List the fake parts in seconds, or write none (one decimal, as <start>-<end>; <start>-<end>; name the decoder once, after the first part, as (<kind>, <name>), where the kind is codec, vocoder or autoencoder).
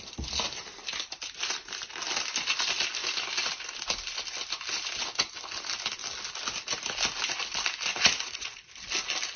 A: 7.9-8.7 (vocoder, Vocos)